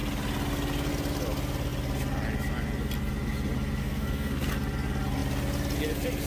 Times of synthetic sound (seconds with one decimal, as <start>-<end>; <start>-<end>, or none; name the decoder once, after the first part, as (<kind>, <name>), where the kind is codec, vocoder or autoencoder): 3.8-4.5 (codec, SNAC)